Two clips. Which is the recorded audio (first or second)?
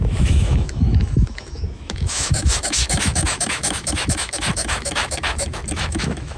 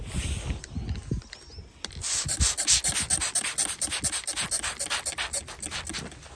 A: second